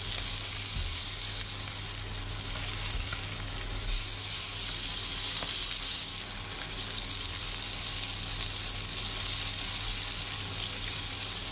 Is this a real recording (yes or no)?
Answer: yes